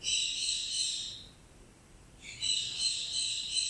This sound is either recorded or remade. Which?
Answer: remade